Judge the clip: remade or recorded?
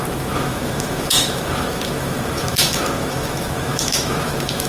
remade